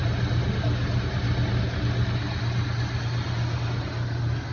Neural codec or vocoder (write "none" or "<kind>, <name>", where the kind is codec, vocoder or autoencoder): none